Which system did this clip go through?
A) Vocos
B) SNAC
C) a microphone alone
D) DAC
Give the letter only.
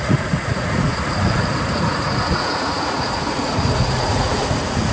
A